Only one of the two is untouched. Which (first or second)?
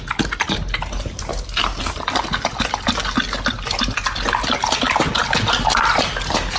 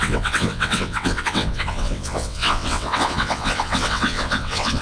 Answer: first